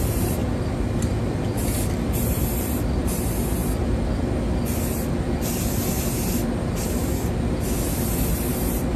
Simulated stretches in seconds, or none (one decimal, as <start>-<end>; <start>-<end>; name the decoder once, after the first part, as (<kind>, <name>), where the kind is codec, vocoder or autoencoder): 0.0-3.5 (vocoder, BigVGAN v2); 8.4-9.0